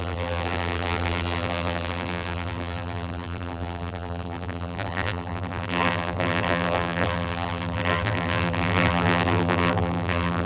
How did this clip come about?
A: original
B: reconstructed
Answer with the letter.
B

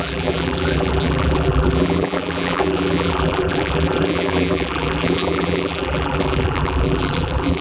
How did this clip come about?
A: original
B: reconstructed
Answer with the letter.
B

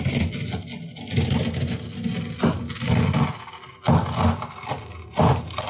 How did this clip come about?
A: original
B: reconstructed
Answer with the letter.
A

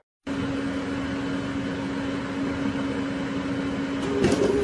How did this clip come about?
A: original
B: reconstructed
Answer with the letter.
A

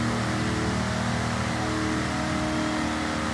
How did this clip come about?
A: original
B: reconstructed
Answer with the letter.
A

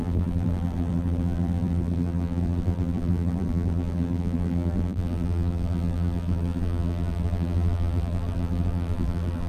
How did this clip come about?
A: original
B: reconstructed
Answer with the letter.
B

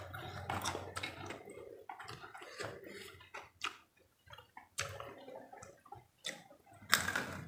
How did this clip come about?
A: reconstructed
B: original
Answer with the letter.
B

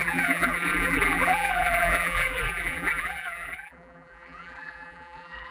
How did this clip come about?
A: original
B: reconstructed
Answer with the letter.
B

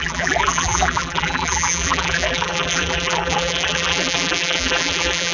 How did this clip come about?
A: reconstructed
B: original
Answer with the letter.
A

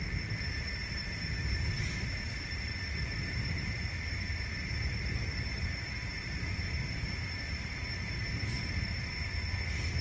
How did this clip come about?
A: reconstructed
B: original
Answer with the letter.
A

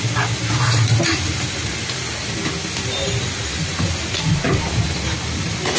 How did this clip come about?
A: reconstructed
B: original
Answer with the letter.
B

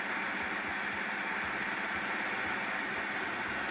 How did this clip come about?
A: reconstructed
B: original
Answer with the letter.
B